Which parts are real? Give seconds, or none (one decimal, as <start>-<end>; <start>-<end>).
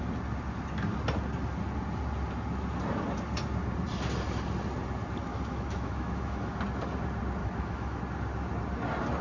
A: 0.0-5.3; 6.6-7.4; 8.0-9.2